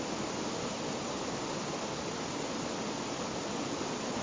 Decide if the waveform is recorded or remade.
recorded